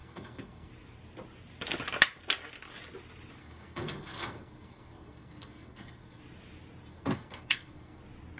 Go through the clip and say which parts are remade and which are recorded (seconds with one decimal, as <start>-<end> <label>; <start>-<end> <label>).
0.0-0.7 remade; 0.7-3.4 recorded; 3.4-6.2 remade; 6.2-6.9 recorded; 6.9-8.0 remade; 8.0-8.4 recorded